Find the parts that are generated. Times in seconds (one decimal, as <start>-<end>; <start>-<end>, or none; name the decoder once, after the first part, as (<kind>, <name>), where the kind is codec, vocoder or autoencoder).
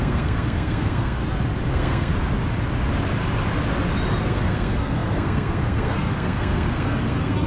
0.0-1.2 (codec, SNAC); 1.7-2.1; 4.2-7.5